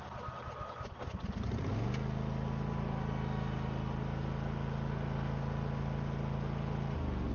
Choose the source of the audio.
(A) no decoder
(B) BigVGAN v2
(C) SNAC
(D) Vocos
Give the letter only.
A